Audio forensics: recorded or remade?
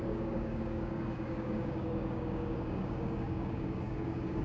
remade